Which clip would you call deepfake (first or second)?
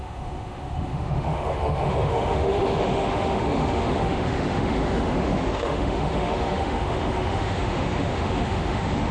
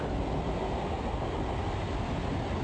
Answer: first